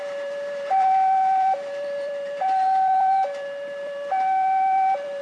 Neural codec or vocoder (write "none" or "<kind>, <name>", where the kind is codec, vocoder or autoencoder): vocoder, BigVGAN v2